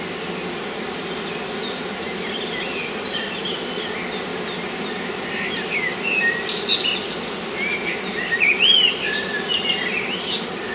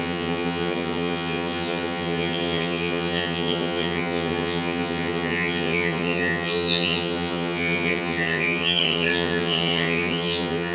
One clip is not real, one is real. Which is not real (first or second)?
second